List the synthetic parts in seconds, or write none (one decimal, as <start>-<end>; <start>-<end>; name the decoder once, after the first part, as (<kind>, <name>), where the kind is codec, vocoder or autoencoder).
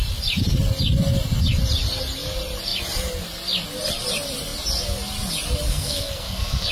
5.7-6.7 (codec, SNAC)